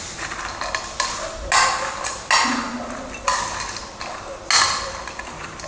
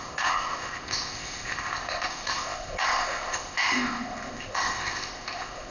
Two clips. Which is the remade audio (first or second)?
second